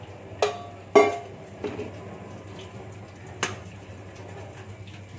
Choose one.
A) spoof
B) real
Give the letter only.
B